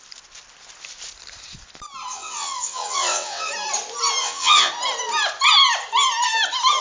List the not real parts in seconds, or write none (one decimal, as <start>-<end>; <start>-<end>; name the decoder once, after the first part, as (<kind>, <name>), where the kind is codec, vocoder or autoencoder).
2.1-3.5 (vocoder, WaveNeXt); 4.2-4.7